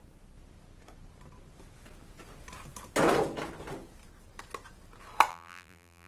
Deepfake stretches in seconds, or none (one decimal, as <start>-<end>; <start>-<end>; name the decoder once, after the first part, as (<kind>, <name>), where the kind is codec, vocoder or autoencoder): 5.3-6.1 (vocoder, BigVGAN v2)